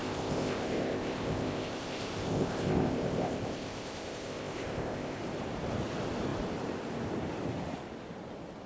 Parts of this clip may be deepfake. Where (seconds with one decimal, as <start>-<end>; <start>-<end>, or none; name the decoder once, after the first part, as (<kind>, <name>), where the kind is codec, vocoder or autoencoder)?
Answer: 0.0-5.2 (codec, ZipCodec)